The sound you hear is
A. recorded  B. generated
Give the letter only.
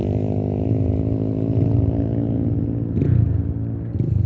A